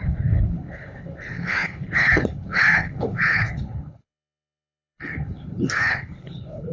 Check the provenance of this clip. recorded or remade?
remade